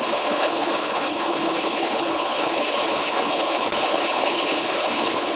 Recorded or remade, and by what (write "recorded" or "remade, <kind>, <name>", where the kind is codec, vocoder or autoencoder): remade, codec, HILCodec